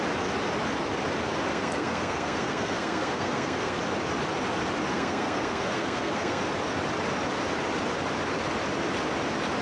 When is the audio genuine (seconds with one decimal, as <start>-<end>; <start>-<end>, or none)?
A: 0.0-1.5; 3.8-4.9; 6.4-9.6